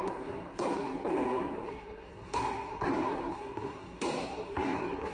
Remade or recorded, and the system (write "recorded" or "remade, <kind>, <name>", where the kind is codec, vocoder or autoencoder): remade, codec, SNAC